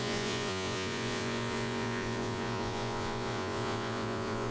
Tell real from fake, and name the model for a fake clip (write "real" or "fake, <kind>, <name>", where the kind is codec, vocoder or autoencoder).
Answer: fake, vocoder, Vocos